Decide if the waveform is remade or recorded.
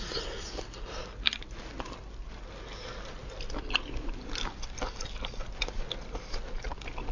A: recorded